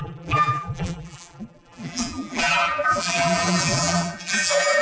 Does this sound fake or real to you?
fake